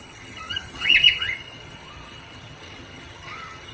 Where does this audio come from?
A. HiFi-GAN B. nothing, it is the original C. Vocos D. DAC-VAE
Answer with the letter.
A